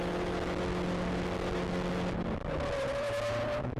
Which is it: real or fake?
real